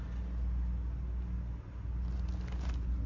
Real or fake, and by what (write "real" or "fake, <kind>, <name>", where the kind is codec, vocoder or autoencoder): real